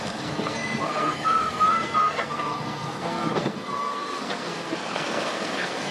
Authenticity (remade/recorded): remade